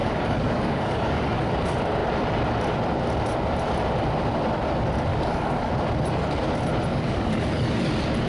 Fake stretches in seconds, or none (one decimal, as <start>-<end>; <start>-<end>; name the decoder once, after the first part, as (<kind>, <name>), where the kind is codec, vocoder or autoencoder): 0.0-1.4 (codec, DAC); 5.1-5.7; 6.9-7.9